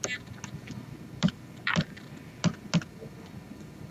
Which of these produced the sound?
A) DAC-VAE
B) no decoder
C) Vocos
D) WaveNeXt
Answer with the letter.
B